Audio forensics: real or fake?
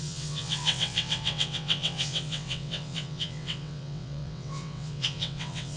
fake